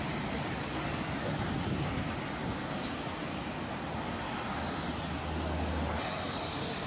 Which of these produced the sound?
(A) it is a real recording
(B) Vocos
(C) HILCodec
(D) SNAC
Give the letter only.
A